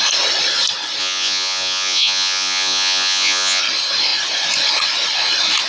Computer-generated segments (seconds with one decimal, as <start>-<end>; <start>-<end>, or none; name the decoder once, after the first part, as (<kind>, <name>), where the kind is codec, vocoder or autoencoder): 1.0-3.6 (vocoder, Vocos)